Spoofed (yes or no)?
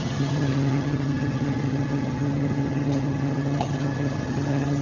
yes